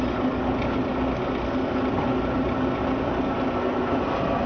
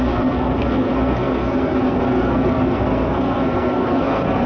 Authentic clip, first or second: first